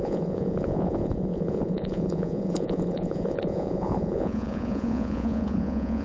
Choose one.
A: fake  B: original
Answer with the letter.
A